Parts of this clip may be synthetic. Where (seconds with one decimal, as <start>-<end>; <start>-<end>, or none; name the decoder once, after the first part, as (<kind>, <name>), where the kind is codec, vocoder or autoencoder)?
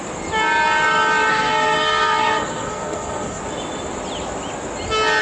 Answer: 1.3-3.4 (codec, SNAC)